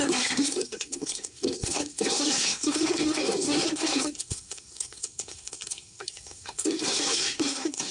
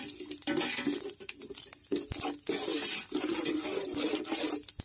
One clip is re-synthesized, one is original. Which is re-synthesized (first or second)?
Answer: first